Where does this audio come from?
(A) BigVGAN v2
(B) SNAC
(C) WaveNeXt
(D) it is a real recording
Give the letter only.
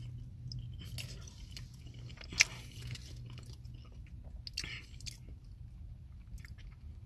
D